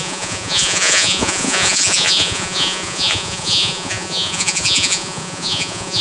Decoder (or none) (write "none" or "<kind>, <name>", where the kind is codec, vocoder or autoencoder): vocoder, Vocos